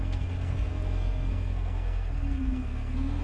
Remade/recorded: remade